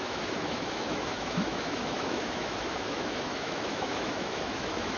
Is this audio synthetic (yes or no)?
yes